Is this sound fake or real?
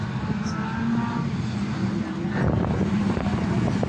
real